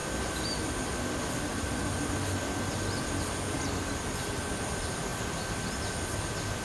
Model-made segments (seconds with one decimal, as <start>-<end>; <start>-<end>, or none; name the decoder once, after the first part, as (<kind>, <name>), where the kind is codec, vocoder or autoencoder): none